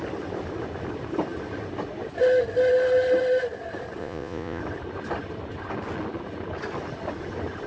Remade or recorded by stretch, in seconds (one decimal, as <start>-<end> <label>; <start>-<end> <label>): 0.0-4.0 recorded; 4.0-4.6 remade; 4.6-7.7 recorded